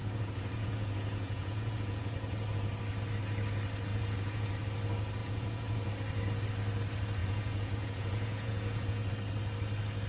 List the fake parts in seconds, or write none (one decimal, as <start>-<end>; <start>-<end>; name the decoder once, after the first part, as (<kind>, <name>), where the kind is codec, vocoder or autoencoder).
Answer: 0.0-2.8 (vocoder, Vocos); 3.9-4.5; 5.2-5.9; 7.2-9.1